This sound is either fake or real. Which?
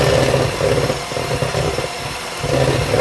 real